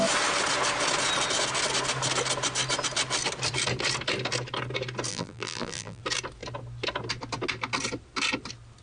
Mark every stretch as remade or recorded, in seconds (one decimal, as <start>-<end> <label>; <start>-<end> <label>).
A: 0.0-5.1 recorded; 5.1-6.0 remade; 6.0-8.8 recorded